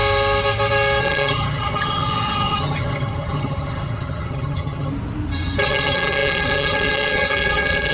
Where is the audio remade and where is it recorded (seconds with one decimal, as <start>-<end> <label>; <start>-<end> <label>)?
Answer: 0.0-1.0 recorded; 1.0-4.9 remade; 4.9-5.6 recorded; 5.6-7.9 remade